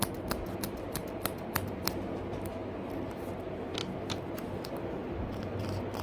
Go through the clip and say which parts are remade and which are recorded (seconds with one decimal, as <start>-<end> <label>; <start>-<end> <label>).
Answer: 0.0-6.0 recorded